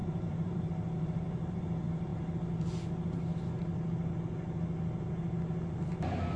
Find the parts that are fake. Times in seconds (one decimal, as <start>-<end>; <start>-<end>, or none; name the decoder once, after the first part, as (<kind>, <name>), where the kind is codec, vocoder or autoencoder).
0.0-1.6 (vocoder, BigVGAN v2)